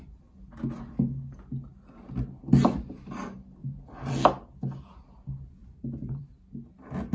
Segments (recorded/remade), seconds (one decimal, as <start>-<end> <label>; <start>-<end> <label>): 0.0-3.6 recorded; 3.6-4.1 remade; 4.1-5.6 recorded; 5.6-6.4 remade; 6.4-7.1 recorded